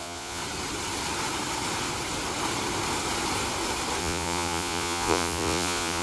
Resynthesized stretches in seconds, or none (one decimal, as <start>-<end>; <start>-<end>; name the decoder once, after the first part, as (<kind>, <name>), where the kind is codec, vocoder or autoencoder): 0.0-0.4 (vocoder, Vocos); 4.0-6.0